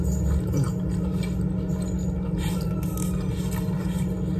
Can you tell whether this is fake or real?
real